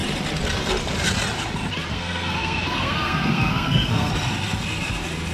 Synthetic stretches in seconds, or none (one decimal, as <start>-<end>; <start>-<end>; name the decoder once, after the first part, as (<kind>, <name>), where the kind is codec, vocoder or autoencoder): 1.9-4.1 (codec, SNAC)